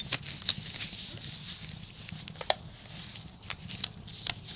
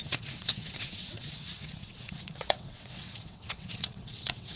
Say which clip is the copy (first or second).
second